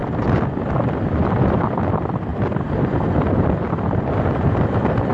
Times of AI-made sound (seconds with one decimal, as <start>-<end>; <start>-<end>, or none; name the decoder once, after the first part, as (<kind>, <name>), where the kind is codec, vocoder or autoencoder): 2.3-4.6 (vocoder, BigVGAN v2)